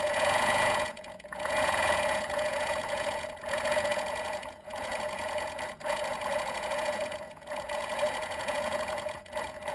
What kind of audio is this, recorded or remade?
remade